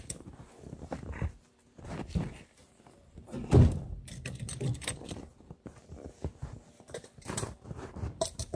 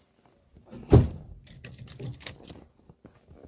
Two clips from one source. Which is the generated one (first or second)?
first